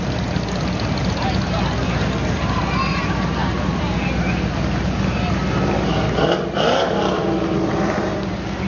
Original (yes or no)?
yes